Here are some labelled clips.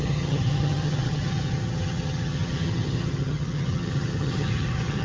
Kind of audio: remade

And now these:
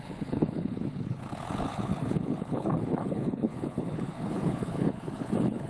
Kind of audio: remade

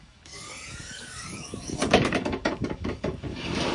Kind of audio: remade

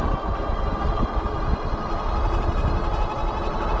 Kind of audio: recorded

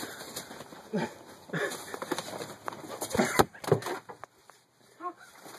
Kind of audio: recorded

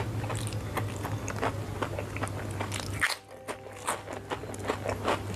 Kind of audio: recorded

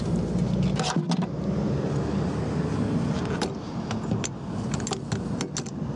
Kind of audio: recorded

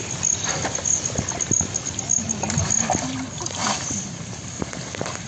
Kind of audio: recorded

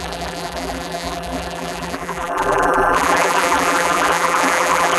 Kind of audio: remade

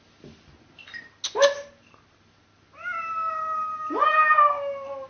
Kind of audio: recorded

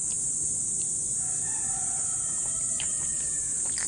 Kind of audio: remade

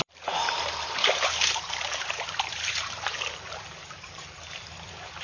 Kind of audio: remade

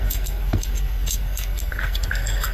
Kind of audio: remade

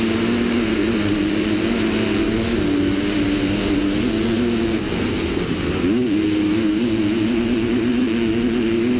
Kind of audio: recorded